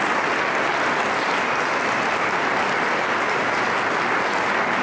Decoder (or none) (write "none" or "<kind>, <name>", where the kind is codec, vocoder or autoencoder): none